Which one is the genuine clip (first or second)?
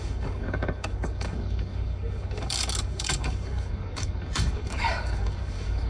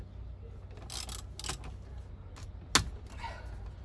second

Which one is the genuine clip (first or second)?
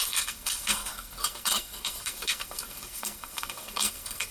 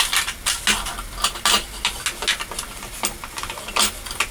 second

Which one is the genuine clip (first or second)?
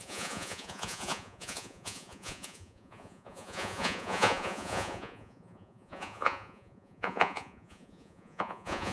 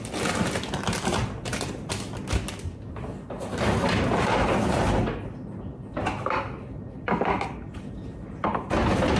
second